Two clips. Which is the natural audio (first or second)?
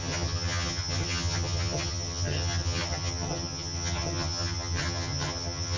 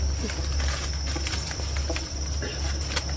second